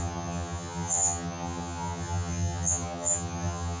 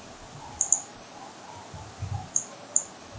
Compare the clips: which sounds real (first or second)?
second